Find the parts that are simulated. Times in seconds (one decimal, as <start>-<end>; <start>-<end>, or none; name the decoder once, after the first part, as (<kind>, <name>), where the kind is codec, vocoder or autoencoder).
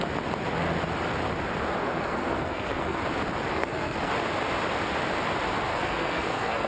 1.8-3.0 (codec, SNAC); 3.5-4.1; 5.7-6.7